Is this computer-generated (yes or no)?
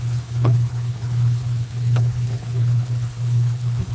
yes